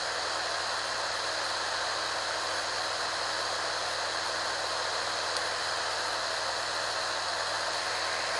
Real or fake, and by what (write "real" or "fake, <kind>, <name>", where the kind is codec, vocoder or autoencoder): real